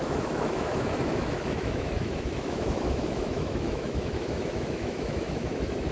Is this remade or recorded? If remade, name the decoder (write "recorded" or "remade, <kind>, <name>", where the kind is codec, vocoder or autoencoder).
remade, autoencoder, DAC-VAE